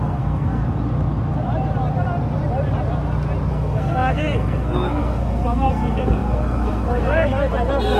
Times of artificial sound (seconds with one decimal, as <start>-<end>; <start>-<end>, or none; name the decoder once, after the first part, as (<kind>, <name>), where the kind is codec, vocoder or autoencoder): 0.0-0.6 (codec, SNAC); 3.5-8.0